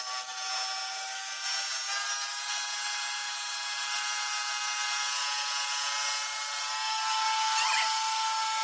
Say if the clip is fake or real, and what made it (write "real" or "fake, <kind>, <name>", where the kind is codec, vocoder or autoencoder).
real